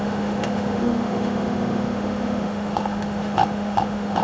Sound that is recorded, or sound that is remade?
remade